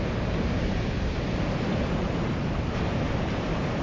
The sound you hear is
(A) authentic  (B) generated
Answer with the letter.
B